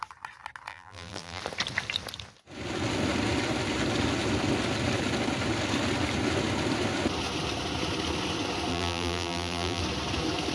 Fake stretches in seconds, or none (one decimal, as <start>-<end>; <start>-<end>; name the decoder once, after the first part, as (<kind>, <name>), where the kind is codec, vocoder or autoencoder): 0.7-1.4 (vocoder, BigVGAN v2); 8.7-9.8